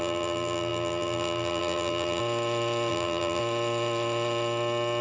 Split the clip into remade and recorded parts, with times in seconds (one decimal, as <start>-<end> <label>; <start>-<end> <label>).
0.0-2.2 remade; 2.2-2.9 recorded; 2.9-3.4 remade; 3.4-5.0 recorded